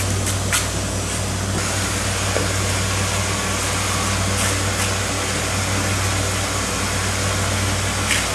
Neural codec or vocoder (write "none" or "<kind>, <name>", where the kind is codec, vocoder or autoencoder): none